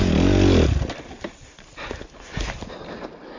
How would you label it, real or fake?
real